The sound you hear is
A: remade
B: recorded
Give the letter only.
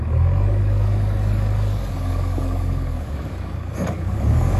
A